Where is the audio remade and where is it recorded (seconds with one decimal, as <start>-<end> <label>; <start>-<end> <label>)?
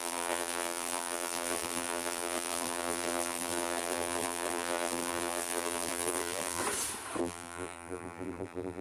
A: 0.0-6.6 remade; 6.6-7.2 recorded; 7.2-8.8 remade